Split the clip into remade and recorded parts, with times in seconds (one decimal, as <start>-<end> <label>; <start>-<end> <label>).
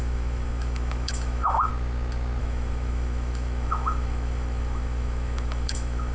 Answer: 0.0-1.7 remade; 1.7-2.4 recorded; 2.4-6.1 remade